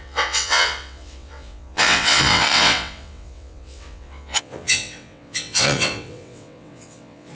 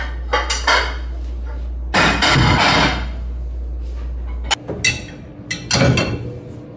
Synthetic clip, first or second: first